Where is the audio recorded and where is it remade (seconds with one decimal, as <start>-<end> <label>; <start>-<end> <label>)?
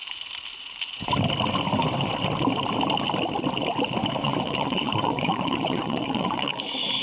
0.0-4.2 recorded; 4.2-6.6 remade; 6.6-7.0 recorded